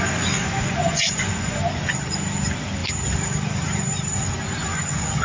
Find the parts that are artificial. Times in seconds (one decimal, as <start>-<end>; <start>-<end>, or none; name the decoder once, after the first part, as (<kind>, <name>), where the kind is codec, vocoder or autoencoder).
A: 0.4-1.6 (vocoder, Vocos); 4.6-5.2